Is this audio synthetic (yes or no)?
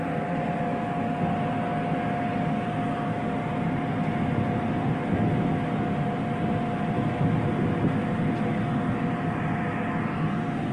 no